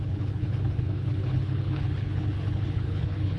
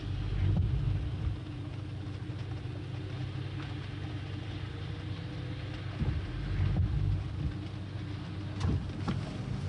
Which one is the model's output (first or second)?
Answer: first